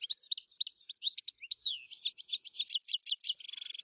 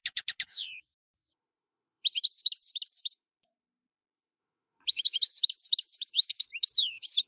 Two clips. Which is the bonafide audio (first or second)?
first